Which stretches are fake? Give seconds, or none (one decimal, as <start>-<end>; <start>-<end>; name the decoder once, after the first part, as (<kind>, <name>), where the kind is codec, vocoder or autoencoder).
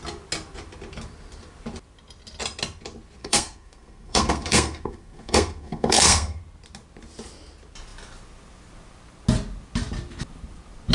3.2-6.4 (codec, SNAC)